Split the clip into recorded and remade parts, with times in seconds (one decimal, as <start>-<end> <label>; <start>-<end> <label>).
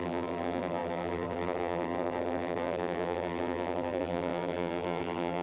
0.0-5.4 remade